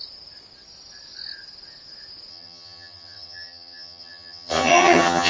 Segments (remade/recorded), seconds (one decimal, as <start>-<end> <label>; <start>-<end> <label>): 0.0-2.3 recorded; 2.3-5.3 remade